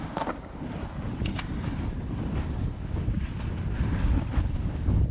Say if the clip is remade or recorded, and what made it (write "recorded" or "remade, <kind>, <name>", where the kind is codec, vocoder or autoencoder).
recorded